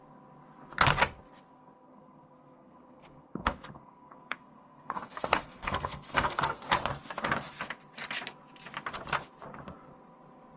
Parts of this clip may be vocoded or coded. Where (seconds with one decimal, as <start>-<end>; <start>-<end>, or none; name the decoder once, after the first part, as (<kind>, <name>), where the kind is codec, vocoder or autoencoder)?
1.5-6.6 (codec, SNAC)